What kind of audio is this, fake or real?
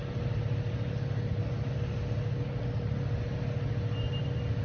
real